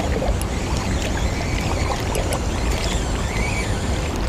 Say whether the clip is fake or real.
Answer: real